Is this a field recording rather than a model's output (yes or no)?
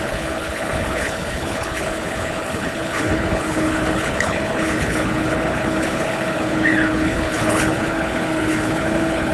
no